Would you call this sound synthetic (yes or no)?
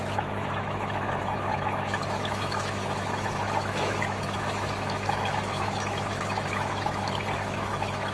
yes